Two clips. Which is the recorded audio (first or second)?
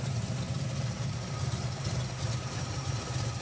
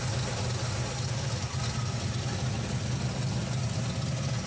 second